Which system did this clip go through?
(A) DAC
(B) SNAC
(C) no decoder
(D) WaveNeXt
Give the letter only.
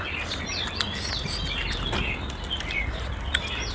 C